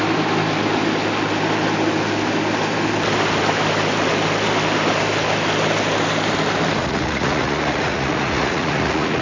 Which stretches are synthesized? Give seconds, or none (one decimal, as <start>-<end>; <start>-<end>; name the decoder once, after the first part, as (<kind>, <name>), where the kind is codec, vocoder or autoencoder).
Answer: 6.8-9.2 (vocoder, Vocos)